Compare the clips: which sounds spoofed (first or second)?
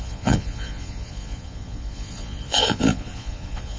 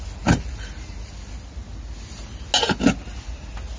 first